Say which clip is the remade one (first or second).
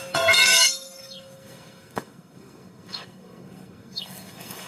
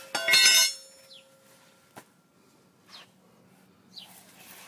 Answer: first